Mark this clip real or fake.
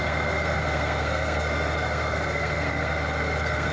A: fake